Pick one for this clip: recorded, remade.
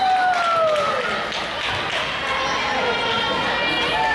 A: recorded